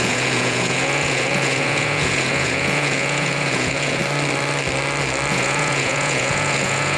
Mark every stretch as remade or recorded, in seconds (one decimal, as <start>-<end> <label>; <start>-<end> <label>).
0.0-4.0 remade; 4.0-5.3 recorded; 5.3-7.0 remade